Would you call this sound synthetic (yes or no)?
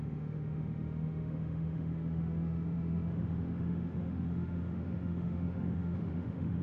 yes